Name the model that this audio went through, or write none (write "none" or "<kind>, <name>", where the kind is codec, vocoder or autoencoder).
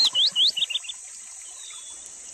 none